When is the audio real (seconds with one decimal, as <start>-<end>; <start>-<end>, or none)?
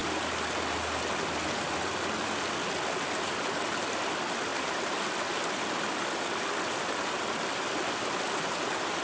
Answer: 0.0-9.0